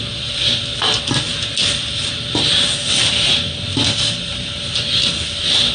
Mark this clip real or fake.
real